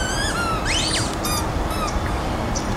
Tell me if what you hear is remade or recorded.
recorded